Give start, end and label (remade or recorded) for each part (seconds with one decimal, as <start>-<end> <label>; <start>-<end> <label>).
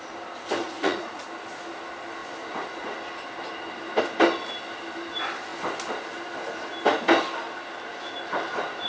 0.0-0.6 recorded; 0.6-1.2 remade; 1.2-8.9 recorded